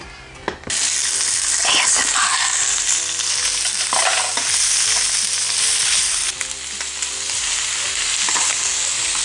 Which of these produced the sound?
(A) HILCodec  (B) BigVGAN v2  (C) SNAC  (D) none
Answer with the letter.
D